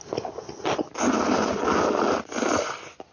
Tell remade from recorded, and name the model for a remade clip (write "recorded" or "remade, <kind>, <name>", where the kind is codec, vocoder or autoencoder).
recorded